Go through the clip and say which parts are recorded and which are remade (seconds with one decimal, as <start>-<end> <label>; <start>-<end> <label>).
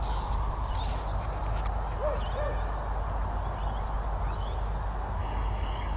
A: 0.0-5.2 recorded; 5.2-6.0 remade